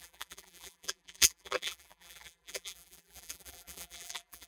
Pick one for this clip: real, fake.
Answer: fake